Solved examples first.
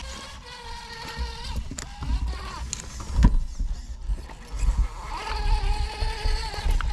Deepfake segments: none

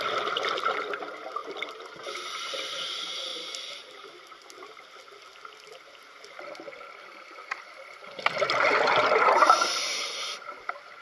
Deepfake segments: 1.4-2.8

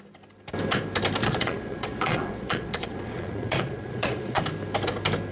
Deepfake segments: 1.2-4.4

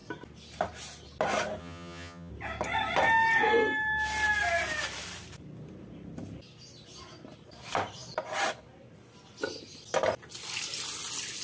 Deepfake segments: 1.6-2.3

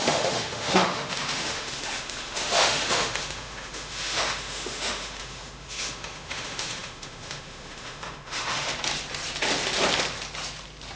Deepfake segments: 0.0-8.7

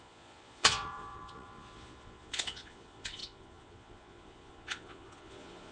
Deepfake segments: 0.0-5.7